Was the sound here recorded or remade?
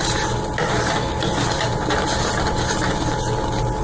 recorded